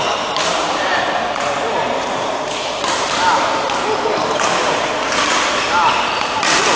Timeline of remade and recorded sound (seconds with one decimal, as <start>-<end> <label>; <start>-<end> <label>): 0.0-6.8 remade